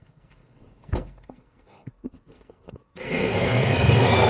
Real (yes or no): no